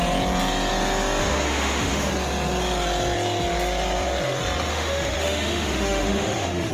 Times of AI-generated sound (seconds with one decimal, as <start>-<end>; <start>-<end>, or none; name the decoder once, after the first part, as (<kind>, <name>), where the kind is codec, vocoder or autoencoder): 1.2-2.1 (autoencoder, DAC-VAE); 4.7-6.7